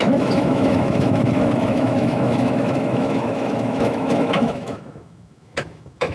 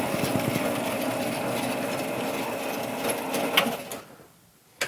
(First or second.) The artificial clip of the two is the first